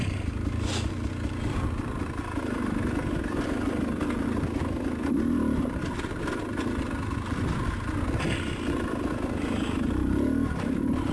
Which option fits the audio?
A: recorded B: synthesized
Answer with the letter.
A